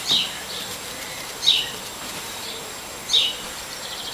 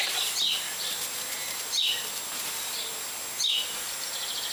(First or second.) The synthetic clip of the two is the first